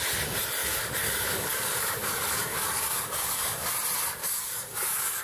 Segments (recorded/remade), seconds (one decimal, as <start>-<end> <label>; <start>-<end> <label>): 0.0-0.6 recorded; 0.6-3.7 remade; 3.7-4.2 recorded; 4.2-5.2 remade